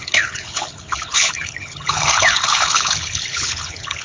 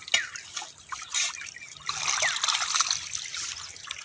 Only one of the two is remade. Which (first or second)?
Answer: first